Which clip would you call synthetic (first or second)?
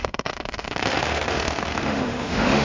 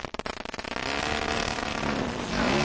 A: first